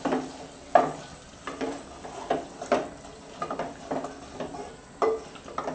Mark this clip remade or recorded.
recorded